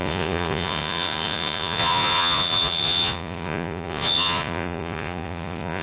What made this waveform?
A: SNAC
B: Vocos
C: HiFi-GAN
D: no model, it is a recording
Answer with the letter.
B